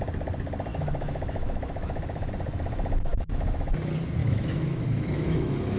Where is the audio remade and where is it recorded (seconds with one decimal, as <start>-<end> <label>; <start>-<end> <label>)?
0.0-0.7 recorded; 0.7-2.3 remade; 2.3-3.1 recorded; 3.1-3.7 remade; 3.7-4.2 recorded; 4.2-5.8 remade